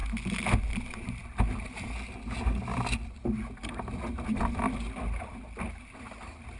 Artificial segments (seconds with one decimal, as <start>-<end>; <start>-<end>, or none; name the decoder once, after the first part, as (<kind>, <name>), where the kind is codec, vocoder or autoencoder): none